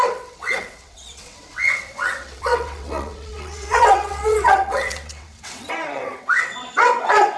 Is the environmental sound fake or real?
fake